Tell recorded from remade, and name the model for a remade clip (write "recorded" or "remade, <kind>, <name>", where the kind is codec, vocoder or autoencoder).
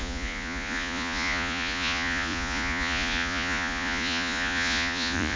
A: remade, vocoder, Vocos